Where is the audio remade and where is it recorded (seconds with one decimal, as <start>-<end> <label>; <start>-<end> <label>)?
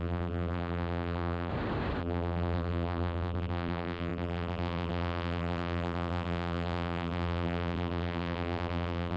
0.0-1.5 remade; 1.5-2.0 recorded; 2.0-9.2 remade